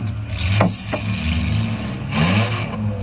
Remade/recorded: recorded